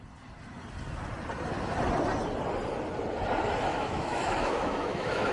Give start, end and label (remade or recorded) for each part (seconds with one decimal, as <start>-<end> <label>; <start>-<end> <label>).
0.0-3.7 recorded; 3.7-5.3 remade